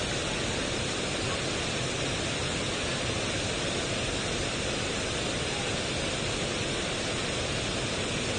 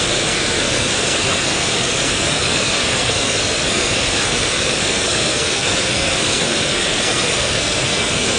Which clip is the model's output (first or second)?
second